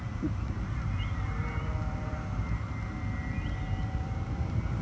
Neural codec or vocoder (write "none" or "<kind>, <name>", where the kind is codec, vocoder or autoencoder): vocoder, BigVGAN v2